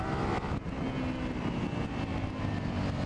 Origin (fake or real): real